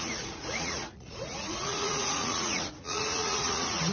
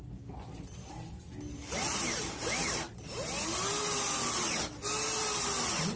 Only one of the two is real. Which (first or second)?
second